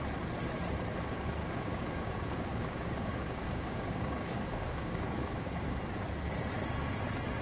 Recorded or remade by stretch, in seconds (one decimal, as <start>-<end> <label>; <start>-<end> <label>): 0.0-1.4 recorded; 1.4-5.8 remade; 5.8-7.4 recorded